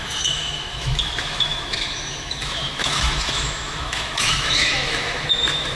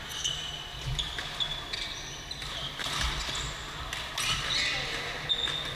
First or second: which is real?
second